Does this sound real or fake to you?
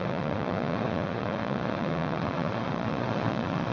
fake